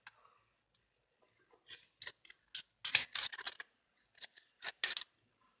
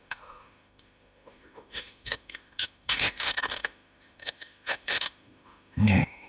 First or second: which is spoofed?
second